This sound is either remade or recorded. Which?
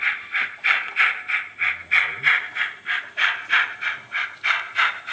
recorded